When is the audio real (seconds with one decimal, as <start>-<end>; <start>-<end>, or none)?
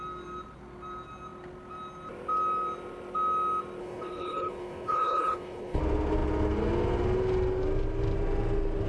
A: 0.0-3.8; 5.8-8.9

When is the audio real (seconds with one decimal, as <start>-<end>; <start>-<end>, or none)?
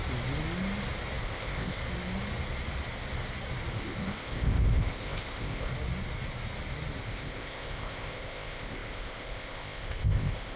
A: 0.0-1.2; 1.8-3.7; 5.7-7.0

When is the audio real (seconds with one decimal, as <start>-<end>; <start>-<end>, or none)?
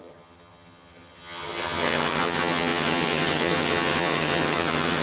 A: none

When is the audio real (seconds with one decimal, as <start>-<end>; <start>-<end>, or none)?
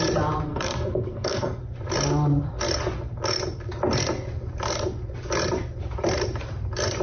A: 0.0-0.5; 1.6-7.0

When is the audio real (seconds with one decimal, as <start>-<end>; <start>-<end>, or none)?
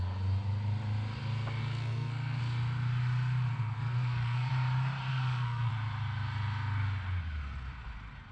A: 0.0-1.6; 2.4-3.5; 4.5-5.1; 5.7-8.3